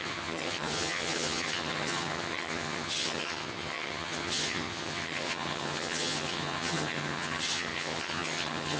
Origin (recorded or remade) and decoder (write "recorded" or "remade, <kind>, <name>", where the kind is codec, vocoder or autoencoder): remade, vocoder, HiFi-GAN